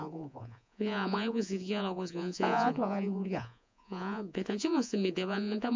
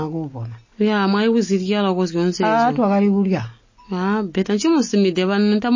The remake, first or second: first